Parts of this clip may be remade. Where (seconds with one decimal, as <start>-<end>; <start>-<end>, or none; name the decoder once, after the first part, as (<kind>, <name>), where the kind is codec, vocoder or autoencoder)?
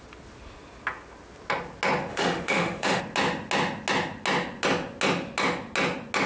2.1-3.0 (autoencoder, DAC-VAE)